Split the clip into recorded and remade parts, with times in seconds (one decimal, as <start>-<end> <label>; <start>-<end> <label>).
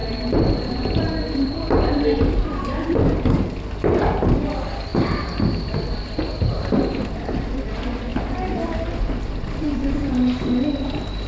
0.0-3.0 remade; 3.0-4.9 recorded; 4.9-5.7 remade; 5.7-8.1 recorded; 8.1-10.1 remade; 10.1-11.3 recorded